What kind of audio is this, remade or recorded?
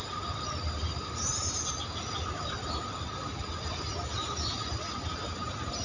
recorded